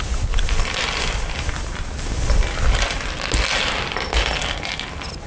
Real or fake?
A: real